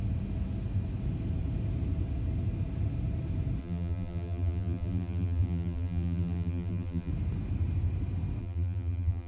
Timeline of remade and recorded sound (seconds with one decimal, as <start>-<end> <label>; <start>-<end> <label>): 0.0-3.6 recorded; 3.6-7.1 remade; 7.1-8.4 recorded; 8.4-9.3 remade